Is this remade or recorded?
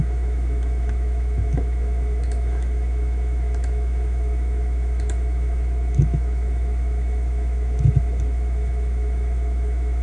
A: remade